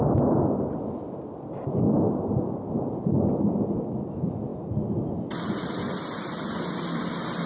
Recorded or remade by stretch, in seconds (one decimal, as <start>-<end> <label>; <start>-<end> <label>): 0.0-7.5 recorded

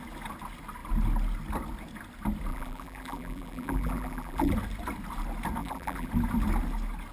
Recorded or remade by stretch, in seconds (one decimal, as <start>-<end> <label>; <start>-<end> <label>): 0.0-2.5 recorded; 2.5-4.5 remade; 4.5-5.6 recorded; 5.6-6.1 remade; 6.1-7.1 recorded

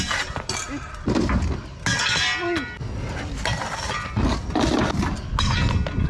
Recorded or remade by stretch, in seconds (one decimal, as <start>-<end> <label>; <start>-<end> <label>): 0.0-6.1 recorded

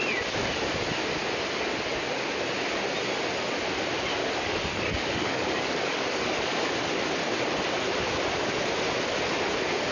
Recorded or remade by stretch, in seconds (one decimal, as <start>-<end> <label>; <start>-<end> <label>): 0.0-4.2 recorded; 4.2-6.6 remade; 6.6-9.9 recorded

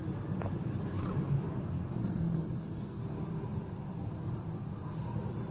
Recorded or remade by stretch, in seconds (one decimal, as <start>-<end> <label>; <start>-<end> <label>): 0.0-2.0 recorded; 2.0-3.0 remade; 3.0-5.5 recorded

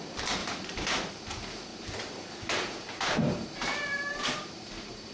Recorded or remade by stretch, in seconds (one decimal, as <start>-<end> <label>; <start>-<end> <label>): 0.0-0.4 recorded; 0.4-1.1 remade; 1.1-1.7 recorded; 1.7-5.1 remade